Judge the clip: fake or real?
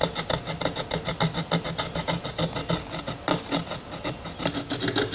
real